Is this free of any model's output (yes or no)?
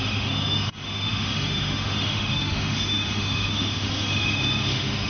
no